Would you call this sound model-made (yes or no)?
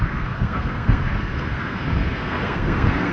yes